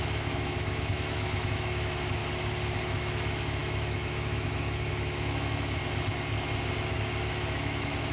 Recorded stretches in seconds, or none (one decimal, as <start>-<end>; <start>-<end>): 2.2-2.8; 5.8-7.3